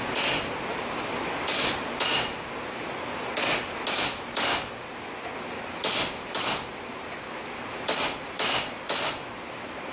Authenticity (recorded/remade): recorded